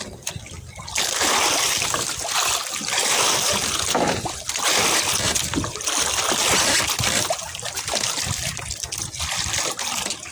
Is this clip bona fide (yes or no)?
no